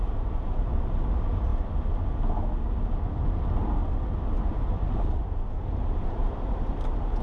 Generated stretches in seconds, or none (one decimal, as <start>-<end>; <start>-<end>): 0.0-1.5; 3.3-3.8; 4.4-7.2